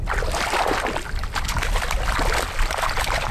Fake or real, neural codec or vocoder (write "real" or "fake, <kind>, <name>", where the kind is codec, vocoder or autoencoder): real